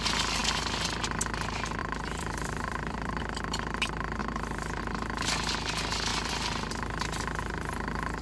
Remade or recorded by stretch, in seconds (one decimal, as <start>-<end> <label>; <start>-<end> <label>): 0.0-1.8 recorded; 1.8-3.2 remade; 3.2-6.1 recorded; 6.1-6.7 remade; 6.7-8.2 recorded